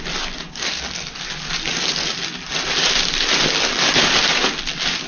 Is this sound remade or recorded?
recorded